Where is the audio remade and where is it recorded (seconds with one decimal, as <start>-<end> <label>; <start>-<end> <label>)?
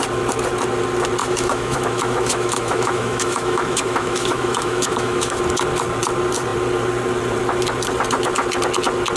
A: 0.0-1.2 recorded; 1.2-5.4 remade; 5.4-9.2 recorded